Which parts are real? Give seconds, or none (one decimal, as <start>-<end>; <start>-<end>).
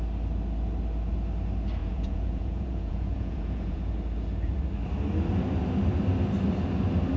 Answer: 0.0-1.8; 3.9-7.2